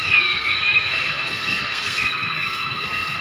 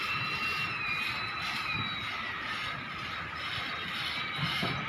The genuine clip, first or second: second